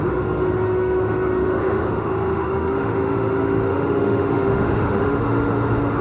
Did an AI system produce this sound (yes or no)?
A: yes